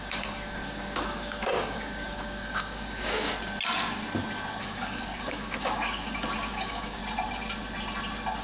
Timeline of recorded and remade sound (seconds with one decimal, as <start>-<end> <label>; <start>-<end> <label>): 0.0-3.3 remade; 3.3-4.6 recorded; 4.6-7.0 remade; 7.0-8.4 recorded